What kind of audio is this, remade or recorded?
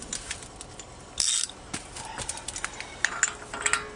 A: recorded